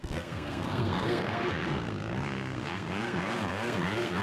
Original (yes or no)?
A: no